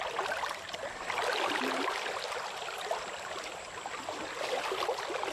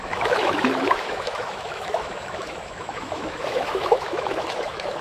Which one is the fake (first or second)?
second